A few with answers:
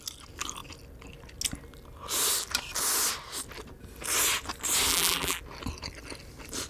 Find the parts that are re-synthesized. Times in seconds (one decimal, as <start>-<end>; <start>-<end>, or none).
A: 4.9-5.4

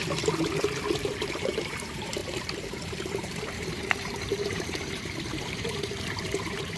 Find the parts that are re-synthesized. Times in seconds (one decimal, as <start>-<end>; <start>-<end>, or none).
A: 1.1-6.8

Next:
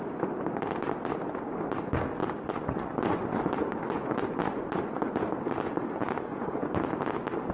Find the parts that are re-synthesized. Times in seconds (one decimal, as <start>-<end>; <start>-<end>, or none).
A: 2.2-5.1; 6.0-6.6

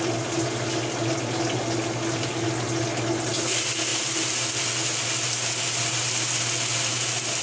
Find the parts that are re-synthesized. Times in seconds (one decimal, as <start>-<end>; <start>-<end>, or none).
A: none

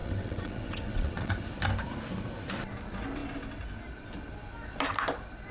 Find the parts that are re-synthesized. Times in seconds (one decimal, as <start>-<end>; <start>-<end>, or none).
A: 0.0-1.3

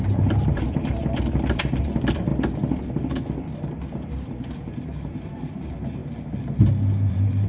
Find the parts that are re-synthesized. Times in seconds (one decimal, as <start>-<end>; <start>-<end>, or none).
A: 0.0-1.0; 1.6-2.3; 3.9-6.0; 7.1-7.5

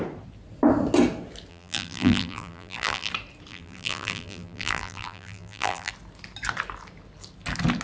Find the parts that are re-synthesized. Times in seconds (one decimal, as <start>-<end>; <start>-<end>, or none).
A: 1.5-3.1; 3.5-5.9

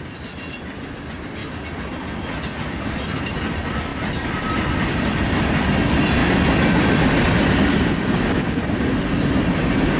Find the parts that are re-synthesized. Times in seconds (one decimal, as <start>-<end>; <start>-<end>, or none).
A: none